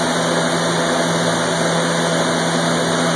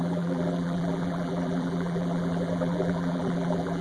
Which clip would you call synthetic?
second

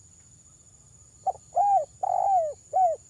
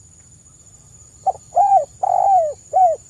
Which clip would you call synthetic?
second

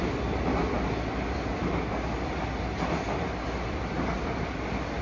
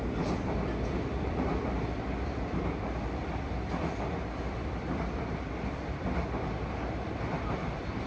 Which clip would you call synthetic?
second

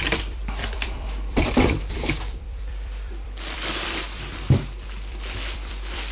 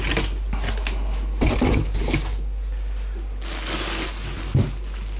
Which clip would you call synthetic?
first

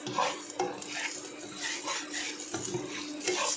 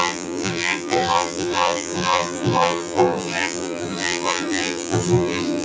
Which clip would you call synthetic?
second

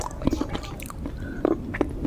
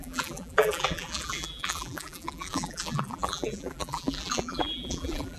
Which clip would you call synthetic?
second